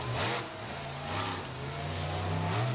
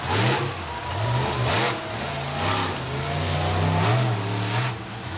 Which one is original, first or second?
first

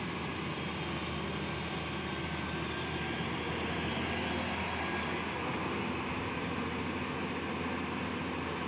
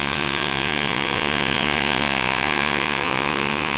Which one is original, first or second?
first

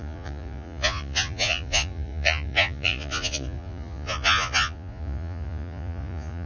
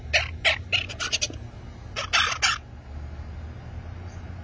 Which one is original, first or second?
second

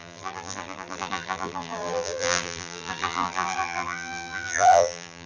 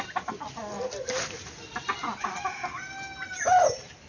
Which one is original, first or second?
second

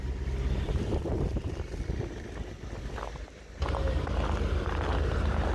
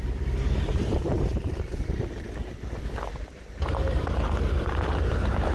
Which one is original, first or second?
first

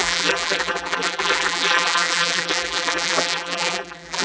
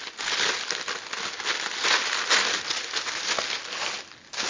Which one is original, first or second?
second